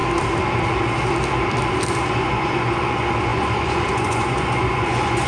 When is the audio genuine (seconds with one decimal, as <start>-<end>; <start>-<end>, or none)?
0.0-2.1